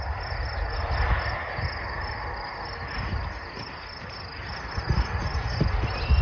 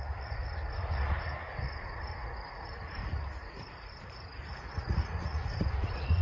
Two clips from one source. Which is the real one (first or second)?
first